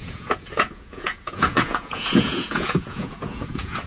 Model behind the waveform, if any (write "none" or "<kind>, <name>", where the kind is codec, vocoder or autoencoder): vocoder, Vocos